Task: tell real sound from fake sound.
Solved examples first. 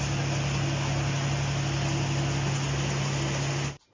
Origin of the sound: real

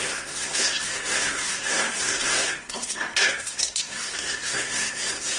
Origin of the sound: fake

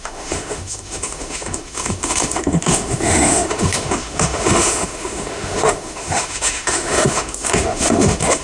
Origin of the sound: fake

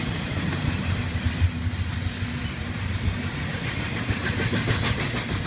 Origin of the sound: real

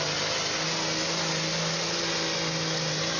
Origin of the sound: real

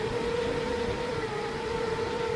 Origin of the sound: fake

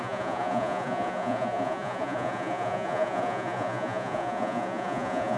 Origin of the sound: fake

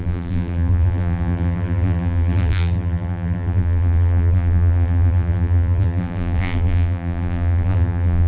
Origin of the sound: fake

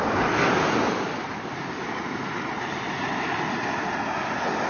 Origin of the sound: real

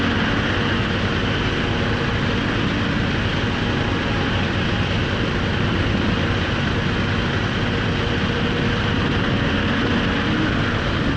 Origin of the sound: real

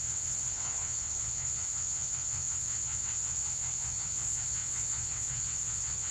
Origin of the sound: fake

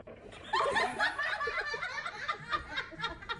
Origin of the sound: fake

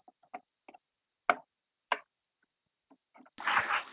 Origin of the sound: real